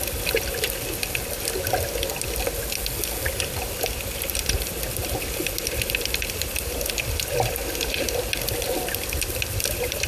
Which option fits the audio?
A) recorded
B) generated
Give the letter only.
A